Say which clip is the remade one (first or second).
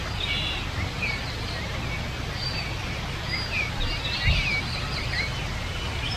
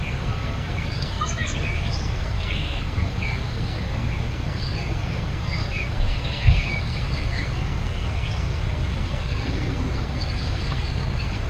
second